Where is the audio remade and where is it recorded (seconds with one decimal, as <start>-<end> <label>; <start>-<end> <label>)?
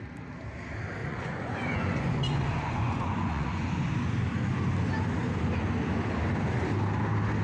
0.0-1.0 recorded; 1.0-3.7 remade; 3.7-7.4 recorded